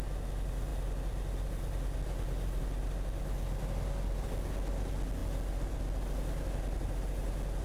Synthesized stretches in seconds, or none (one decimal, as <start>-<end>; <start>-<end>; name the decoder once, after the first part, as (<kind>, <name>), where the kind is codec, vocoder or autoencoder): none